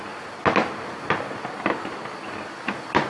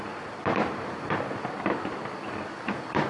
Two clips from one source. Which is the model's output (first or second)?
second